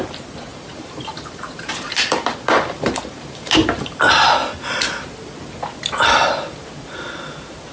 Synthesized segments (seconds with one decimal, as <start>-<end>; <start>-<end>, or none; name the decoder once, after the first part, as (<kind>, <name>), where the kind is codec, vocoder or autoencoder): 0.5-4.0 (vocoder, BigVGAN v2)